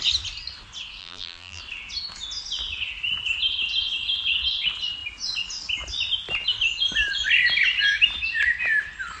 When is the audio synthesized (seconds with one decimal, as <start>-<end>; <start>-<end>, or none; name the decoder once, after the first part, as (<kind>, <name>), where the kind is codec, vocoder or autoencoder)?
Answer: 1.0-1.6 (vocoder, BigVGAN v2)